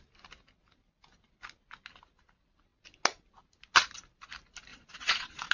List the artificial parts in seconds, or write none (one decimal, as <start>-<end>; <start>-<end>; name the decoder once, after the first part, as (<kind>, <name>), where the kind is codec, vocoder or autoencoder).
4.7-5.5 (vocoder, Vocos)